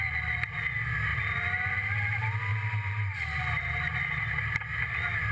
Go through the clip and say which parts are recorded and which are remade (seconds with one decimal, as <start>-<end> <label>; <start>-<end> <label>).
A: 0.0-1.1 recorded; 1.1-1.9 remade; 1.9-2.5 recorded; 2.5-4.4 remade; 4.4-5.3 recorded